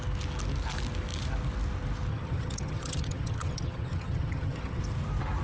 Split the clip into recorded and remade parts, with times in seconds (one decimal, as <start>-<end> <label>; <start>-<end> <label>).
0.0-2.1 recorded; 2.1-4.8 remade; 4.8-5.4 recorded